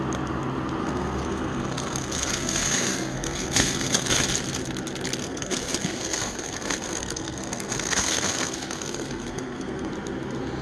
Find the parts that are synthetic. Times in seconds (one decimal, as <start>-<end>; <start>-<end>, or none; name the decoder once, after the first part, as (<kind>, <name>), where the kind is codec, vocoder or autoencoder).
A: 0.8-4.1 (codec, SNAC); 5.2-9.9